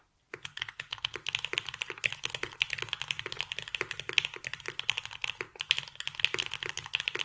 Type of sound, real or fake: real